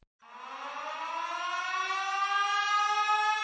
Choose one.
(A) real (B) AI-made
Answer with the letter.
A